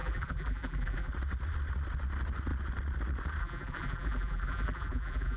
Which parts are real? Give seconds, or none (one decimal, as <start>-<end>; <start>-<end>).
1.1-3.4